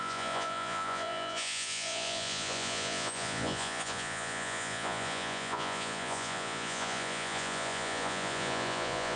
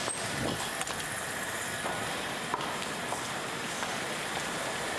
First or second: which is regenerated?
first